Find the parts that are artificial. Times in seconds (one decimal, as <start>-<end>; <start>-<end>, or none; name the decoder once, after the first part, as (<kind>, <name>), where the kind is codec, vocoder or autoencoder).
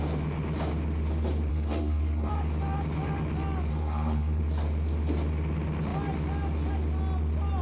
1.5-2.3 (codec, SNAC); 3.7-4.4